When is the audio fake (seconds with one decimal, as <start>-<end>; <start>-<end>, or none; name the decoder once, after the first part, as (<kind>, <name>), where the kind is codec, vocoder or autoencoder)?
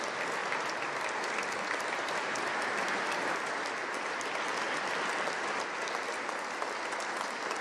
0.4-3.1 (vocoder, BigVGAN v2); 4.5-5.6